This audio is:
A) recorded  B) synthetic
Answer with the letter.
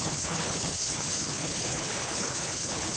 B